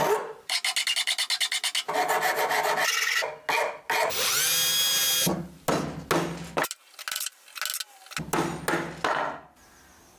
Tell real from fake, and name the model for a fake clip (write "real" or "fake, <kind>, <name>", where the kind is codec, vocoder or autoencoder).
real